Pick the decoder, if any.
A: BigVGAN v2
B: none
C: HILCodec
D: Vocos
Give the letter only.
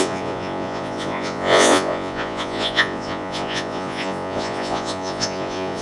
D